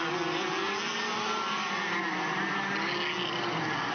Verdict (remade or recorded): recorded